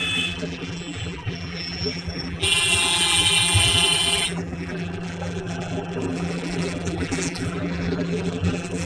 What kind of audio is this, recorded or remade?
remade